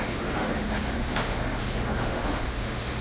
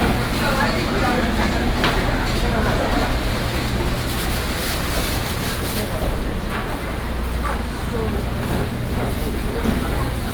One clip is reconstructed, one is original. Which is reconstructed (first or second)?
first